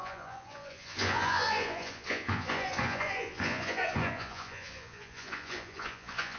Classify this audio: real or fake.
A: fake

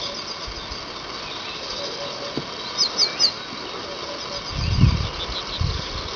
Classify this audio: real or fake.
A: real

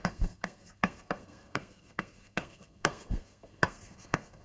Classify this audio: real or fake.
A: fake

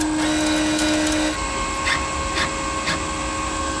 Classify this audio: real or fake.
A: real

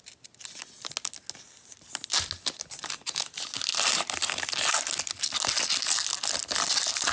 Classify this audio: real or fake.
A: real